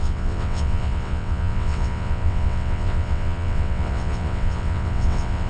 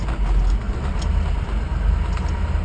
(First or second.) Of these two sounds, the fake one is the first